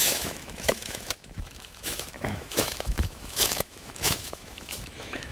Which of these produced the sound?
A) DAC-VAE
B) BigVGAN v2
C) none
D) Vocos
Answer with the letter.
A